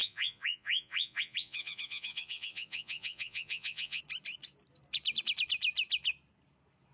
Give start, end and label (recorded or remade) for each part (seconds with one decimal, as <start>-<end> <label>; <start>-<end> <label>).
0.0-4.0 remade; 4.0-6.9 recorded